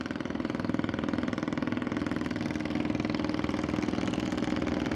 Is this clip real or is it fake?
real